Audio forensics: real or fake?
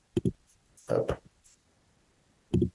real